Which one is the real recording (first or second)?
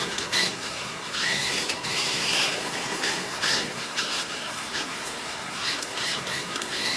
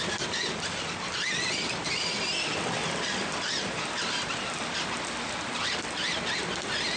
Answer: second